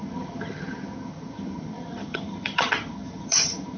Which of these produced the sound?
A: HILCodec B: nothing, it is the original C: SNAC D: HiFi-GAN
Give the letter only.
D